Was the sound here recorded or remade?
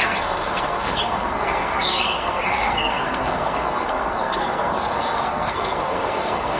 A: remade